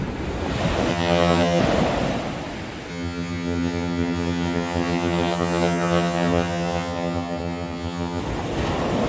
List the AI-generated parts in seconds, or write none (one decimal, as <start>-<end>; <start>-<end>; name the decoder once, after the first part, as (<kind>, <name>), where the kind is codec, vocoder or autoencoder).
0.9-1.6 (vocoder, HiFi-GAN); 2.9-8.2